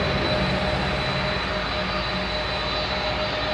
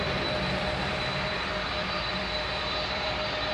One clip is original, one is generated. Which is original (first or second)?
first